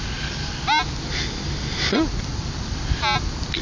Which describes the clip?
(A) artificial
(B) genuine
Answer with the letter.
B